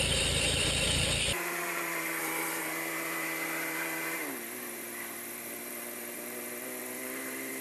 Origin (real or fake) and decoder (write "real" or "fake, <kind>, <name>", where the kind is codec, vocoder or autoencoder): fake, vocoder, BigVGAN v2